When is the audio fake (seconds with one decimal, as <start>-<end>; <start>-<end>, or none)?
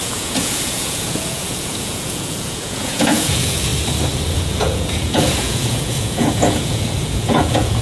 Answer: 0.0-3.7; 4.3-7.8